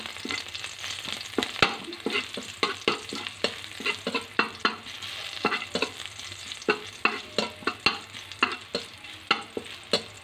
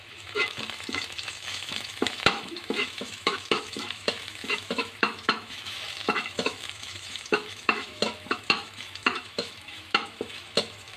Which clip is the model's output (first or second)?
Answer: second